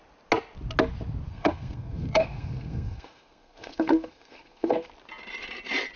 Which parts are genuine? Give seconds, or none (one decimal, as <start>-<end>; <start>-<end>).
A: 0.0-1.3; 4.9-6.0